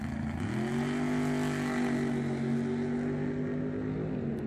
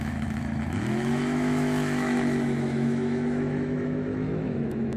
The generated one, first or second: second